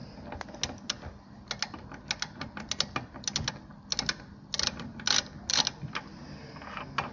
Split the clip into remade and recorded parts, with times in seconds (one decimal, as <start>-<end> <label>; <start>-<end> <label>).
0.0-7.1 recorded